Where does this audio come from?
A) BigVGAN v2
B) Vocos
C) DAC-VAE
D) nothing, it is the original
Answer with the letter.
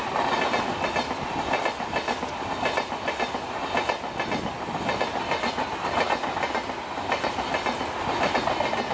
D